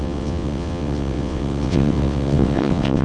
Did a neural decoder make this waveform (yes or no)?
yes